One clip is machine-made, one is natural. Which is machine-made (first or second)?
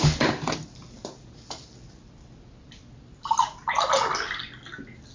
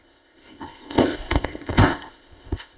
second